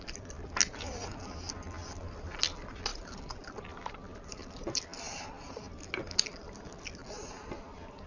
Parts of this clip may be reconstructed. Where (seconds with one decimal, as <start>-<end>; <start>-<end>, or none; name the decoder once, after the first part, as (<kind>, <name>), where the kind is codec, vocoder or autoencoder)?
none